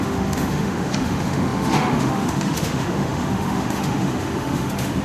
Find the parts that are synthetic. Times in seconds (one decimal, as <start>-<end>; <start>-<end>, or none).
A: 0.0-5.0